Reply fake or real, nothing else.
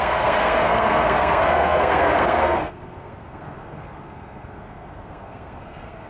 fake